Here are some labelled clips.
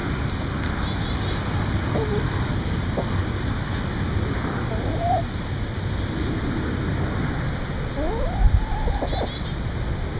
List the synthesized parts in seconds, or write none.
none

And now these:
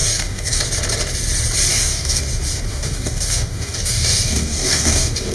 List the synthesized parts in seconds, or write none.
0.0-0.6; 1.7-2.2; 2.7-5.3

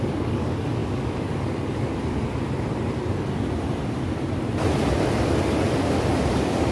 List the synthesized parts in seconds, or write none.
0.0-2.2; 6.2-6.7

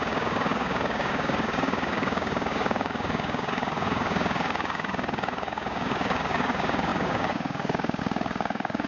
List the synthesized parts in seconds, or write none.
0.0-8.9